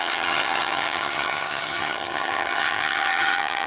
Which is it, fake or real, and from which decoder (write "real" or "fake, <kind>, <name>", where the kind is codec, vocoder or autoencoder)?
fake, vocoder, HiFi-GAN